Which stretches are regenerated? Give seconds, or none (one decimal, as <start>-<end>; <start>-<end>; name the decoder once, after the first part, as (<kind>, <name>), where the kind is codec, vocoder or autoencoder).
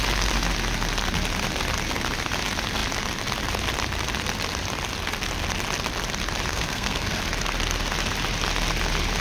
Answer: 6.5-7.2 (codec, SNAC)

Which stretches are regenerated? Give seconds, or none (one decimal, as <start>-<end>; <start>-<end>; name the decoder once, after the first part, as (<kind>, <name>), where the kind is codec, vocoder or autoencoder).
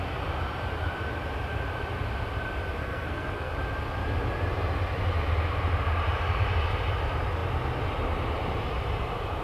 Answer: 2.8-3.5 (codec, SNAC)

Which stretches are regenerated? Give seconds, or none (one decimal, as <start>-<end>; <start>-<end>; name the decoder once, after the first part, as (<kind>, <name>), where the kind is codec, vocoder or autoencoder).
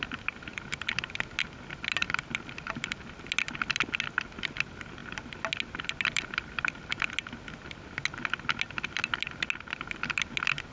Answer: none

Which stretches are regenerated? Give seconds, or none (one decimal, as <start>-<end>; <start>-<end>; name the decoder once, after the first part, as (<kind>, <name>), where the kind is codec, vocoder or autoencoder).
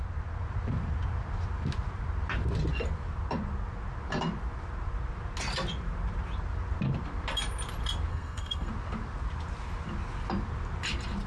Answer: 8.1-8.7 (codec, SNAC)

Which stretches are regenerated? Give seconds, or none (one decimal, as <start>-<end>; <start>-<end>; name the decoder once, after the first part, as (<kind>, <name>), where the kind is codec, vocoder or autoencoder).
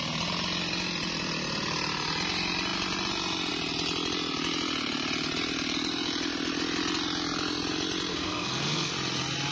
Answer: 8.1-8.9 (codec, SNAC)